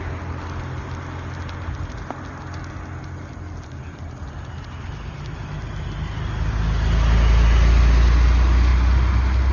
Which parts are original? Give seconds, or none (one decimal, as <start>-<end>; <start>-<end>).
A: 0.0-9.5